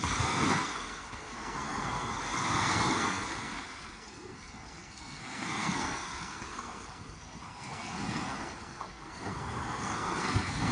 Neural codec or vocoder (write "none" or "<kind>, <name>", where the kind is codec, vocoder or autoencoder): codec, SNAC